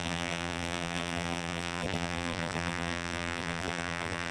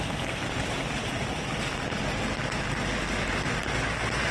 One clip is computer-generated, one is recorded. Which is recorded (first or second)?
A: second